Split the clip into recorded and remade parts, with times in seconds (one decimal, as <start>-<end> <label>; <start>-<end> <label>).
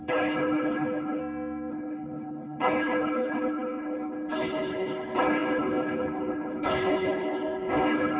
0.0-1.2 remade; 1.2-1.7 recorded; 1.7-8.2 remade